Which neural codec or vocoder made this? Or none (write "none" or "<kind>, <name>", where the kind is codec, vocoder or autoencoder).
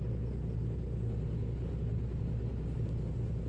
none